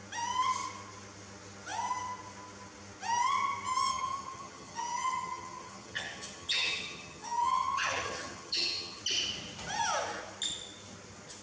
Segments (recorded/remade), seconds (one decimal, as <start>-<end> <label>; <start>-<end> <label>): 0.0-3.9 recorded; 3.9-9.0 remade; 9.0-11.4 recorded